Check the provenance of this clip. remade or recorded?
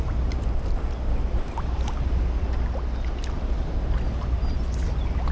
recorded